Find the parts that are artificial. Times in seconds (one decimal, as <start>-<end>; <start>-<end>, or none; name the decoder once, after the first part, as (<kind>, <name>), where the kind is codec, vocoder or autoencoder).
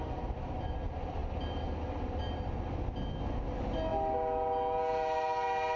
none